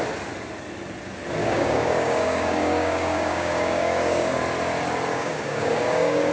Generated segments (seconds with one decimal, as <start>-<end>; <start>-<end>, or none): 1.4-4.4; 5.1-6.3